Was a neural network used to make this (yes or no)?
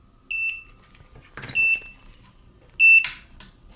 no